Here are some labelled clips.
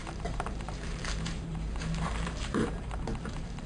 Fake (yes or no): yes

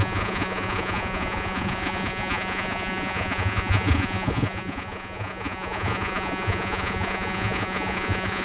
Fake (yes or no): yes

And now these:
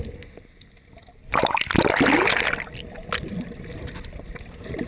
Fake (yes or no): no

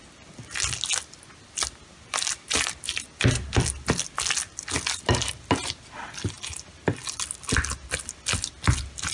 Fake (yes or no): no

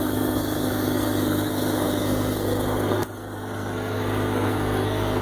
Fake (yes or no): yes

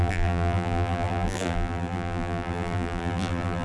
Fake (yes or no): yes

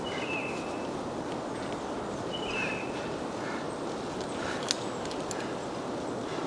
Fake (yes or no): no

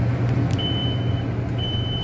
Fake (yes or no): no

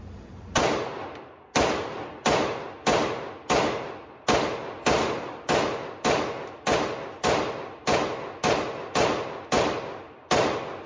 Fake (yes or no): no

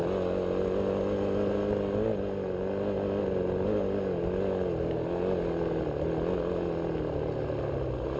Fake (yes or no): no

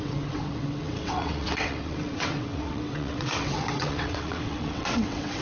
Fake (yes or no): yes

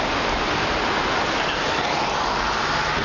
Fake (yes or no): no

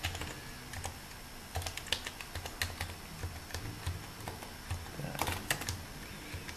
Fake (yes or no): no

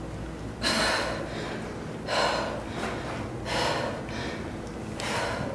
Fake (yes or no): no